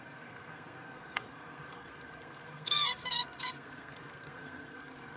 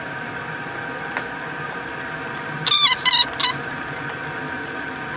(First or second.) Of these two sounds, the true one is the second